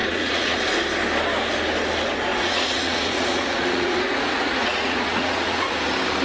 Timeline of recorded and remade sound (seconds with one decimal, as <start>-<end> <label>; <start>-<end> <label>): 0.0-0.6 remade; 0.6-2.3 recorded; 2.3-5.7 remade; 5.7-6.2 recorded